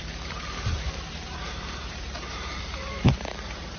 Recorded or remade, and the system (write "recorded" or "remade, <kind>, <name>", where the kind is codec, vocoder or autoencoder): remade, vocoder, BigVGAN v2